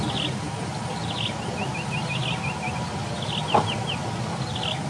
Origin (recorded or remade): recorded